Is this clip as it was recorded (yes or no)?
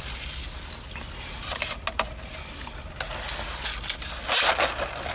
yes